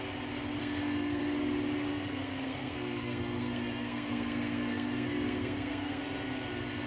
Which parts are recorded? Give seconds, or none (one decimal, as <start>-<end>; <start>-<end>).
0.0-0.6; 1.2-1.9; 6.0-6.9